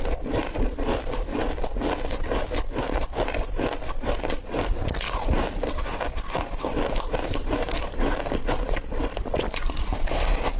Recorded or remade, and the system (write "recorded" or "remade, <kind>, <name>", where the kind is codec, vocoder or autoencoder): recorded